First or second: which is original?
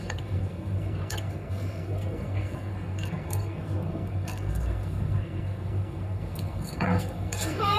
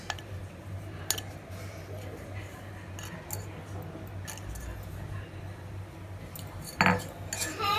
second